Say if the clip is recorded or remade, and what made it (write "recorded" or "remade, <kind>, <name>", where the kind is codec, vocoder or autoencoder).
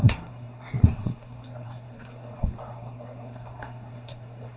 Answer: remade, codec, SNAC